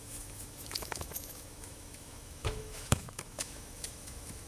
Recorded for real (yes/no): no